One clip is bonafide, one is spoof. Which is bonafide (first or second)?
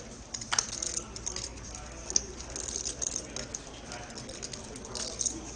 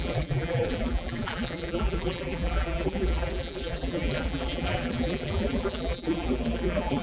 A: first